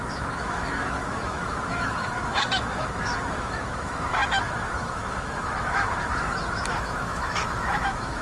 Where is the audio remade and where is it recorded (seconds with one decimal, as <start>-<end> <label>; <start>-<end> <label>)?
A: 0.0-8.2 remade